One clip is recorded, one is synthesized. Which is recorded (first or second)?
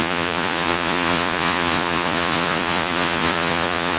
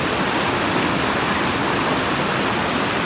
second